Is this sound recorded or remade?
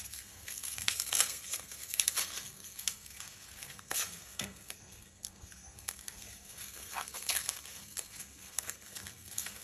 remade